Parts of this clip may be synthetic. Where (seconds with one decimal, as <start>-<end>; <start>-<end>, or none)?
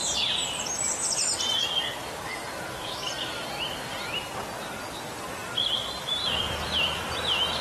0.0-0.7; 5.4-6.6